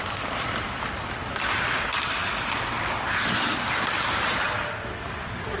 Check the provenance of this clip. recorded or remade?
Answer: recorded